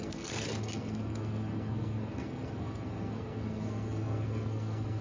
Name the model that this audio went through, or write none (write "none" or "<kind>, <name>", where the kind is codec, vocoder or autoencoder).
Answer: codec, SNAC